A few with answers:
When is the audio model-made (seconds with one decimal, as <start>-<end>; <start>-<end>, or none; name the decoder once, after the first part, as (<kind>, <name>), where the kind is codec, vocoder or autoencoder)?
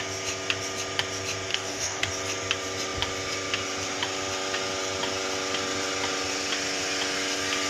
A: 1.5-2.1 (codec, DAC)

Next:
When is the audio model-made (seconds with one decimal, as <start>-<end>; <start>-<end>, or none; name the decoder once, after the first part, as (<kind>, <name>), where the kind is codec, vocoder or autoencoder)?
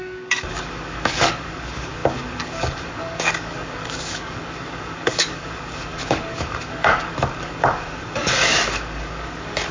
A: 0.0-9.7 (codec, DAC)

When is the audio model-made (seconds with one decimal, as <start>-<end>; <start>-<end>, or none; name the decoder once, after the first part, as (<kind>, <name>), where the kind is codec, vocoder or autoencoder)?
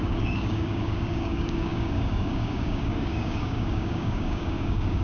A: 0.0-5.0 (codec, DAC)